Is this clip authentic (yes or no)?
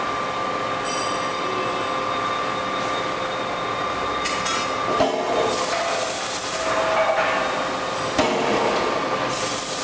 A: yes